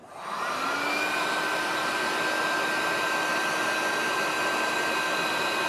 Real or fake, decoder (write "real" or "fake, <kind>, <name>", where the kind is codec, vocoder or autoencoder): real